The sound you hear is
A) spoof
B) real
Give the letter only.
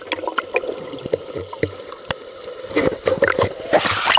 B